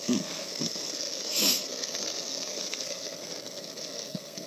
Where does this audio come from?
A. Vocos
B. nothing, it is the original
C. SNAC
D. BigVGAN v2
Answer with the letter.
C